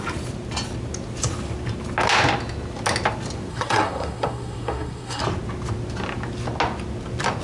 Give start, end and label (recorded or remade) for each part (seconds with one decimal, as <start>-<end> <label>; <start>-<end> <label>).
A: 0.0-3.5 recorded; 3.5-5.2 remade; 5.2-7.4 recorded